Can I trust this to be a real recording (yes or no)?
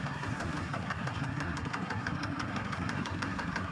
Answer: no